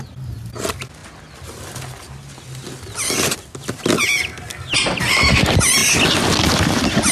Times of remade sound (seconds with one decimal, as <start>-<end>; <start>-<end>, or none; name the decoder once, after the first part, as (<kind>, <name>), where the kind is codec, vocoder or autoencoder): none